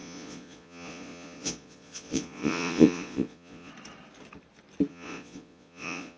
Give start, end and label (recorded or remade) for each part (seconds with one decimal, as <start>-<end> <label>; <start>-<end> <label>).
0.0-3.7 remade; 3.7-4.9 recorded; 4.9-6.2 remade